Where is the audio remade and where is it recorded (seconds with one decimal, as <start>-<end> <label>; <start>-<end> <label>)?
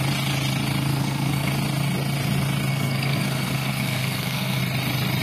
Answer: 0.0-0.9 recorded; 0.9-1.5 remade; 1.5-2.7 recorded; 2.7-4.6 remade; 4.6-5.2 recorded